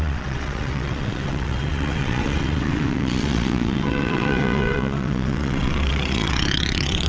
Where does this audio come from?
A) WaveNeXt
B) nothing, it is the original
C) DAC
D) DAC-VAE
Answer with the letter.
A